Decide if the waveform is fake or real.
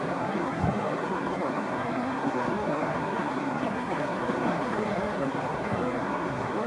fake